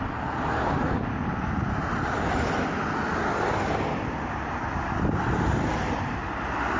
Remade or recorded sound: recorded